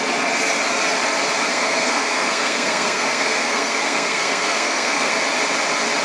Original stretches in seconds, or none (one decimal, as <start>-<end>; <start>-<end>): 0.0-1.5; 5.1-6.0